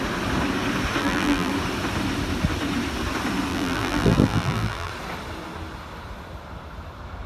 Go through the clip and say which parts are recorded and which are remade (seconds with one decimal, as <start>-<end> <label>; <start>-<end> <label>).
0.0-1.0 recorded; 1.0-1.5 remade; 1.5-3.5 recorded; 3.5-4.9 remade; 4.9-7.3 recorded